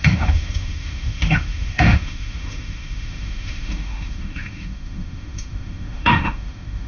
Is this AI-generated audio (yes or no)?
yes